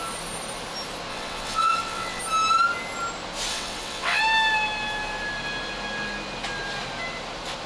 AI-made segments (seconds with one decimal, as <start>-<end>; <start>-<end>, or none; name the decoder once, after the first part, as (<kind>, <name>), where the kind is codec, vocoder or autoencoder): 1.1-2.2 (vocoder, WaveNeXt); 3.5-4.2